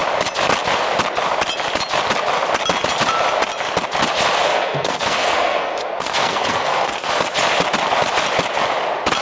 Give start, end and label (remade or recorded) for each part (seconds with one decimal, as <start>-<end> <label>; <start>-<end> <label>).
0.0-4.5 recorded; 4.5-7.1 remade; 7.1-9.2 recorded